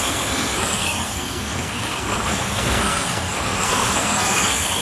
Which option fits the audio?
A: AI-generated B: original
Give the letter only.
A